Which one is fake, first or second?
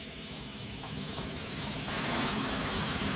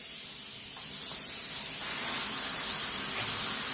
first